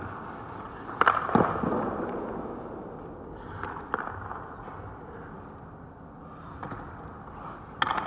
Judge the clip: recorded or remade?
recorded